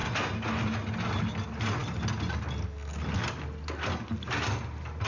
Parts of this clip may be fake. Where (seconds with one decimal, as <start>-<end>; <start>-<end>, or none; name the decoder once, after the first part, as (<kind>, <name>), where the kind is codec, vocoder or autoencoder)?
none